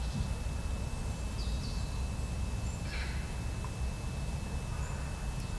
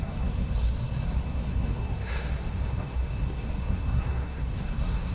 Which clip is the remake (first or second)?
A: second